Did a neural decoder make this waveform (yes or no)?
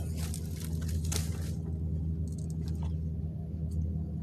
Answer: no